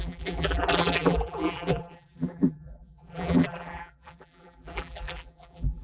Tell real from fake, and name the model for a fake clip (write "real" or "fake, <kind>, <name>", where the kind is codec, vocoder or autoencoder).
fake, vocoder, BigVGAN v2